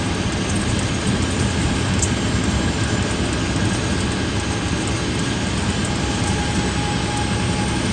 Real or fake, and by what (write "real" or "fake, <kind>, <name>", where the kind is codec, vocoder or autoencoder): real